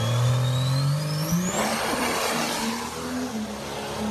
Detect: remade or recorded recorded